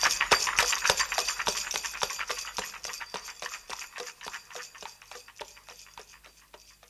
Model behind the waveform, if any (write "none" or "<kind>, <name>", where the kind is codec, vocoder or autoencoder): none